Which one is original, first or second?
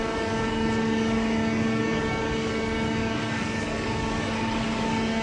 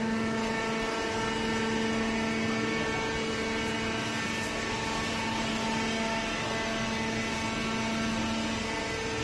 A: second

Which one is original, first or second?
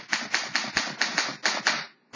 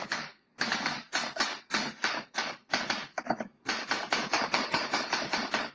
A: first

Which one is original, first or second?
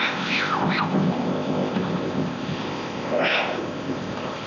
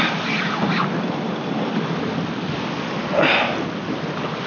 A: second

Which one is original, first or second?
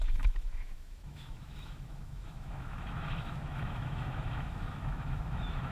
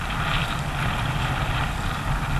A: second